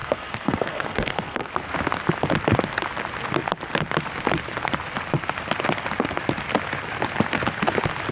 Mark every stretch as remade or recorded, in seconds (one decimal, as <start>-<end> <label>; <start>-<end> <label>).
0.0-1.5 remade; 1.5-8.1 recorded